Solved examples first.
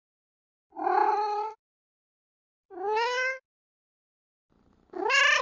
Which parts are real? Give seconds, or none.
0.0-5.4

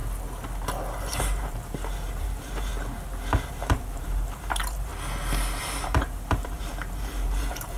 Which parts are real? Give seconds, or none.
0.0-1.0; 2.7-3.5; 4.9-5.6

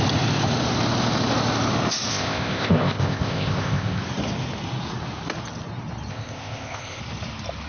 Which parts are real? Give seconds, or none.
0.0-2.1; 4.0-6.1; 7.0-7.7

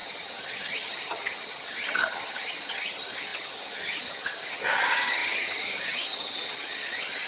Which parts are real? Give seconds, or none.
none

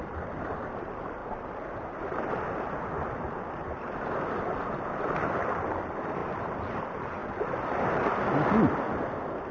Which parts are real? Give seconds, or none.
1.2-4.7; 6.2-6.7; 7.2-9.5

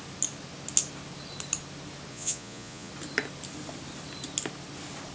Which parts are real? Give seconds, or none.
0.0-2.1; 2.9-5.1